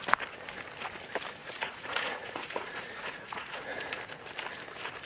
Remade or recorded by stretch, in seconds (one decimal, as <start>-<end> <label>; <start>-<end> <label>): 0.0-1.4 recorded; 1.4-4.0 remade; 4.0-5.1 recorded

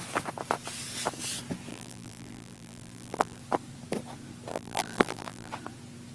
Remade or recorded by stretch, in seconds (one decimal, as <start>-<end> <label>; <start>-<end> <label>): 0.0-1.7 recorded; 1.7-3.4 remade; 3.4-4.5 recorded; 4.5-5.5 remade; 5.5-6.1 recorded

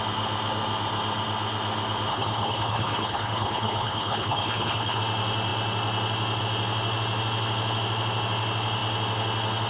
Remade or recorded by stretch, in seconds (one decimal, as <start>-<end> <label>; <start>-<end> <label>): 0.0-2.1 recorded; 2.1-5.0 remade; 5.0-9.7 recorded

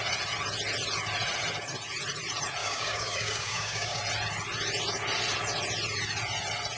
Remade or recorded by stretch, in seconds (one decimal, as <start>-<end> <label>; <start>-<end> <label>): 0.0-2.6 recorded; 2.6-4.0 remade; 4.0-6.8 recorded

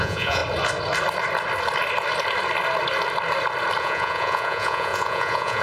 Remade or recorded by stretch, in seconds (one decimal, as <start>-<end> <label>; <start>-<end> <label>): 0.0-0.4 remade; 0.4-3.8 recorded; 3.8-5.6 remade